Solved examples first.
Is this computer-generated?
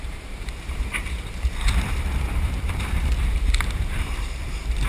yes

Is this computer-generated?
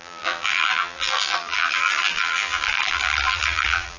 yes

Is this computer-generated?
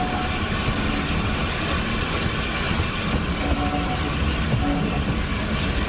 no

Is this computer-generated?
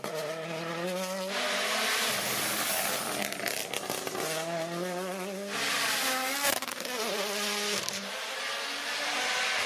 no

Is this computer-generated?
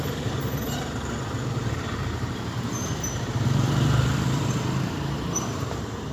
yes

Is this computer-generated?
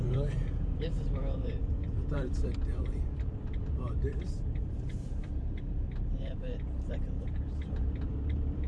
yes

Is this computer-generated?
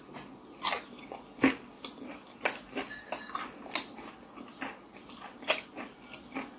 no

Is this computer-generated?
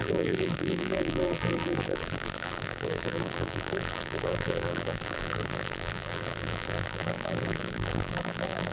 yes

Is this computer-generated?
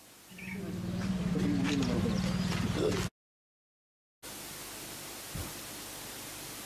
no